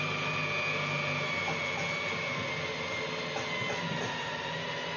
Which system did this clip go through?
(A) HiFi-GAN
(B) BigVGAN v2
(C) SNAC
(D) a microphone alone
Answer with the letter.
D